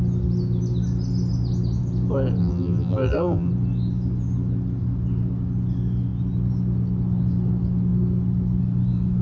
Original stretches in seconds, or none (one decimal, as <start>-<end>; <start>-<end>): 0.0-2.4; 3.5-9.2